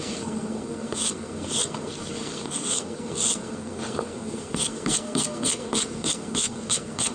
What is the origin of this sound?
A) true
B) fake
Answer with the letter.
B